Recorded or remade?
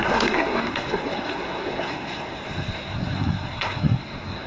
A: remade